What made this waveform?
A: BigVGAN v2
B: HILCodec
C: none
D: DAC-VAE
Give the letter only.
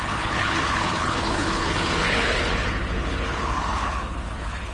B